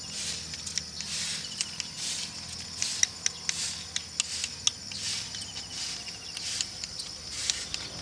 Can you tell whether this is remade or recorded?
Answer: recorded